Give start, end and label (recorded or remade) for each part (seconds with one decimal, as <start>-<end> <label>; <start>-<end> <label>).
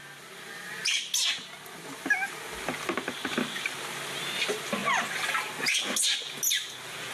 0.0-7.1 recorded